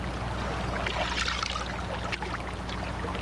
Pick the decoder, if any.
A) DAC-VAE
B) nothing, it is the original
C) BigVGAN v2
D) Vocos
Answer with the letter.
B